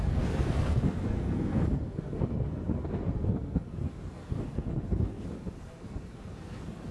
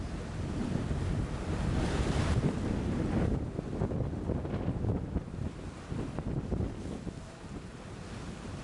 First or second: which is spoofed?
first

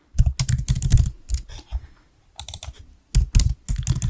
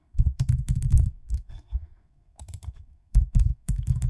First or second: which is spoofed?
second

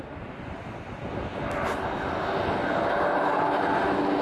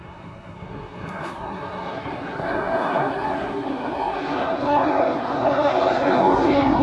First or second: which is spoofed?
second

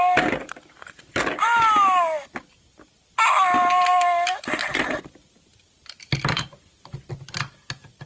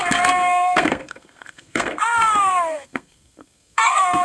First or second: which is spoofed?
second